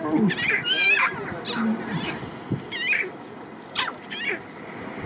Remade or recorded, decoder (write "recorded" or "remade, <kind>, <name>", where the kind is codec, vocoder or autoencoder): recorded